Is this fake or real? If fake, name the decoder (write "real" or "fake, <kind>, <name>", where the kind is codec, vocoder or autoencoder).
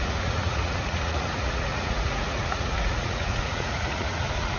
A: fake, vocoder, Vocos